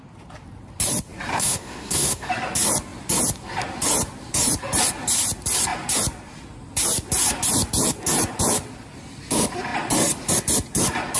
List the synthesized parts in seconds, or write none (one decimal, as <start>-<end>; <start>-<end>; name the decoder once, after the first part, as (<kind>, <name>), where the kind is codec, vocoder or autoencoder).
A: 1.3-2.3 (codec, SNAC)